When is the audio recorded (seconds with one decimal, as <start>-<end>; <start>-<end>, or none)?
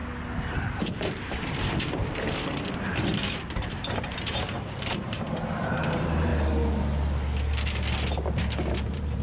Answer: 0.0-0.5; 6.3-8.7